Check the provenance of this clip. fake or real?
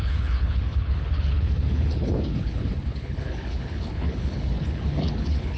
fake